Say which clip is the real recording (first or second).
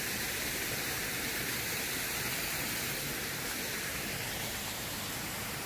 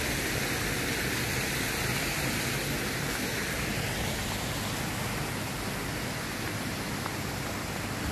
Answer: second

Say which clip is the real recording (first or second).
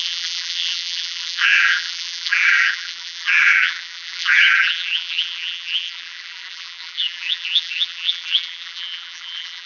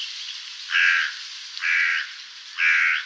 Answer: second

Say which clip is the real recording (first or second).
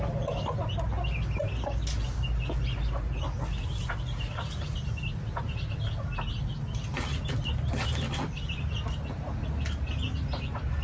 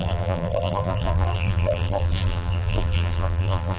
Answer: first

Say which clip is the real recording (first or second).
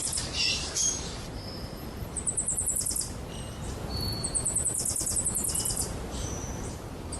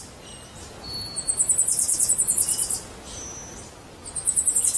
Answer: second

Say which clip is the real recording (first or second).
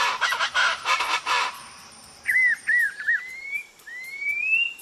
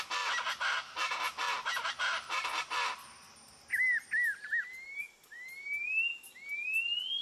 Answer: second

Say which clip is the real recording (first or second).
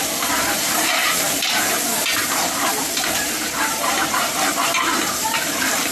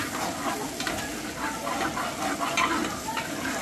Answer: second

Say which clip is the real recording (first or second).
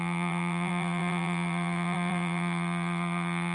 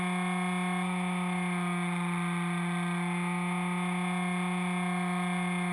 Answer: second